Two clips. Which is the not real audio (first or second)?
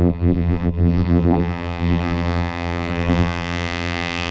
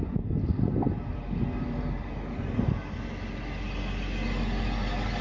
first